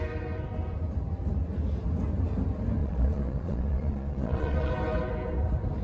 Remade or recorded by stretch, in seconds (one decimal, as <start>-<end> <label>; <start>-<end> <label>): 0.0-2.8 recorded; 2.8-4.7 remade; 4.7-5.8 recorded